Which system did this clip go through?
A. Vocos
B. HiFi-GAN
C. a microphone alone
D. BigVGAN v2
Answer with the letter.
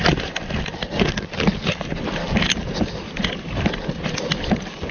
C